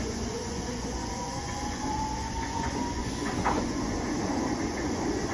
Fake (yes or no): yes